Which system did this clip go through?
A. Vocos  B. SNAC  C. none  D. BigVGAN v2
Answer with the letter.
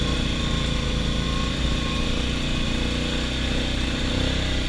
C